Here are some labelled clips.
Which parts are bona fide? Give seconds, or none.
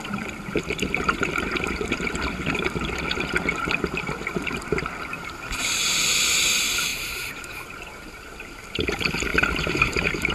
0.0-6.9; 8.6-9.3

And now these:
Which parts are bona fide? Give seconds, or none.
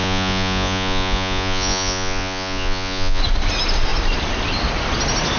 3.2-5.4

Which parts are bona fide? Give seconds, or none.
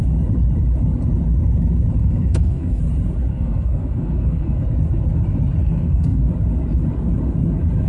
0.0-2.0; 2.8-3.3; 4.6-5.6; 6.3-7.9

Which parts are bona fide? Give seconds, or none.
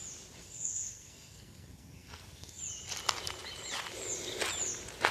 0.0-0.4; 2.6-5.1